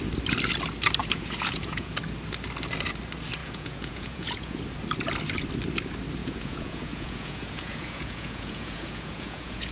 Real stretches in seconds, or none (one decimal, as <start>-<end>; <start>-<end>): 0.0-1.0; 1.9-3.4; 4.6-6.2